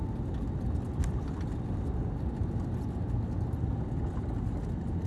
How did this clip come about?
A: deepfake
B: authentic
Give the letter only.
B